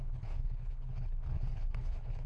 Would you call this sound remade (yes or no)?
yes